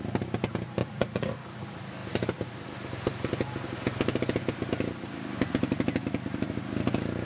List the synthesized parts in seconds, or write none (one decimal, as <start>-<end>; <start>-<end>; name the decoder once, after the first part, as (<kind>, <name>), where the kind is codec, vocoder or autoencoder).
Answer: 0.8-1.3 (vocoder, Vocos)